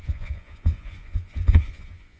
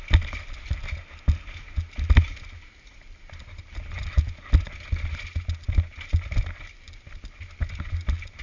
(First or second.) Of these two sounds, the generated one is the first